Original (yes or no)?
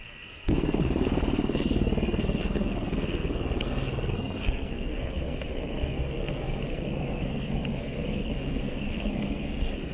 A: no